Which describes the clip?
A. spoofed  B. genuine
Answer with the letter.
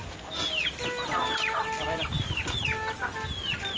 B